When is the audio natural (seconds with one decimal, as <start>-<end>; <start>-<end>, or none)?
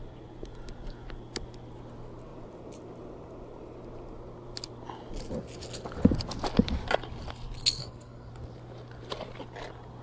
0.0-7.8; 8.3-10.0